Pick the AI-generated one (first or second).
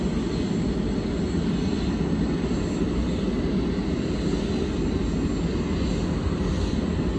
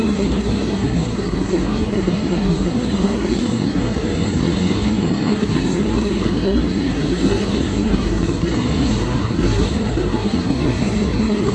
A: second